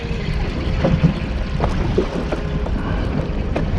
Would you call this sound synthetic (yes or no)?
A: no